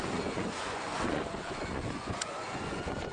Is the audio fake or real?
fake